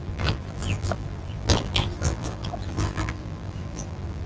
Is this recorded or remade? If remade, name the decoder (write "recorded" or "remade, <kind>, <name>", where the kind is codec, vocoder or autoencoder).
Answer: remade, vocoder, BigVGAN v2